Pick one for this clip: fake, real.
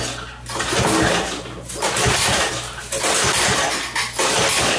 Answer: real